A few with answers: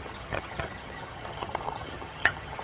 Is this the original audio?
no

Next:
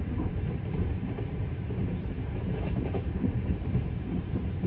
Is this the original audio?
no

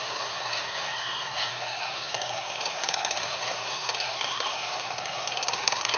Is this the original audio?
no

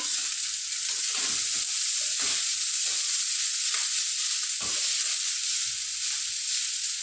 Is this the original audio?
no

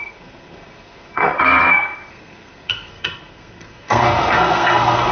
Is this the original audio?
no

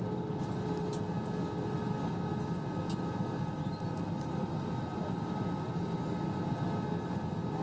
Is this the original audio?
yes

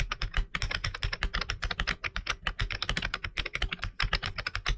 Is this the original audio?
yes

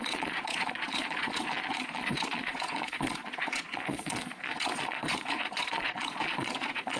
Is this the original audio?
no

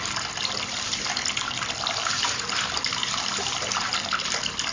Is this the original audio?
yes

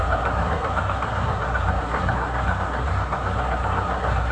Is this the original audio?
no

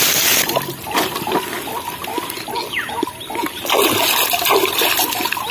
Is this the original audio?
yes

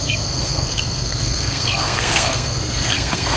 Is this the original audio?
no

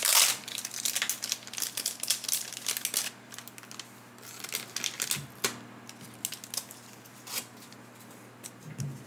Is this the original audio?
yes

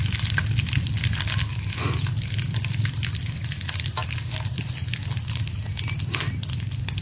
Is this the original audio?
yes